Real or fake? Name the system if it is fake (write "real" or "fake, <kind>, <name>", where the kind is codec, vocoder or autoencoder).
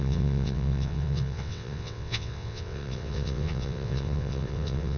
fake, vocoder, WaveNeXt